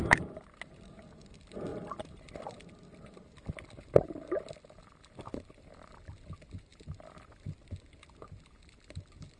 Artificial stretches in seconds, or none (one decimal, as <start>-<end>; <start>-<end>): none